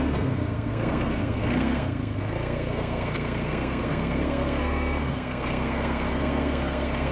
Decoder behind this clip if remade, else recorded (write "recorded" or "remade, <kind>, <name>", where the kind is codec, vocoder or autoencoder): remade, codec, SNAC